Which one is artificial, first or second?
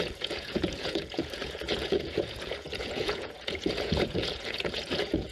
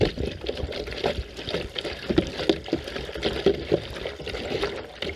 first